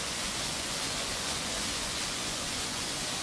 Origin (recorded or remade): remade